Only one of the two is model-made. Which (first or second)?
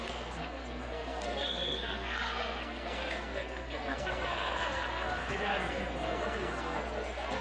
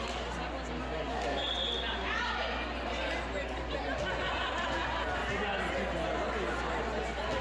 first